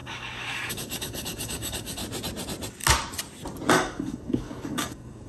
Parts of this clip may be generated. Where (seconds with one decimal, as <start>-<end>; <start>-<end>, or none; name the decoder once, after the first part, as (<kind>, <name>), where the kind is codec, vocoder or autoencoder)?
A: 0.0-2.0 (codec, DAC); 3.7-5.3